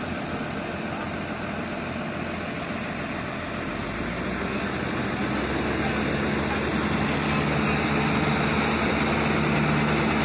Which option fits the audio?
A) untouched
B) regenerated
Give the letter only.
A